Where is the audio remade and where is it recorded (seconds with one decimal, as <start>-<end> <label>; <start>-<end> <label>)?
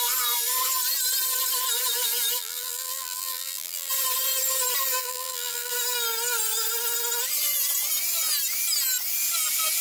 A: 0.0-2.4 recorded; 2.4-3.9 remade; 3.9-5.0 recorded; 5.0-5.7 remade; 5.7-9.8 recorded